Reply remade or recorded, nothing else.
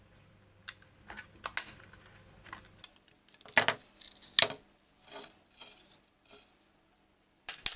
recorded